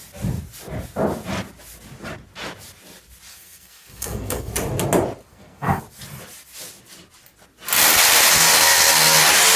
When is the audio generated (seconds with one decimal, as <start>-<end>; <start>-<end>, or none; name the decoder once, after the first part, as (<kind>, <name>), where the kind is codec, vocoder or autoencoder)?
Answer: 3.3-4.5 (codec, SNAC); 5.3-5.8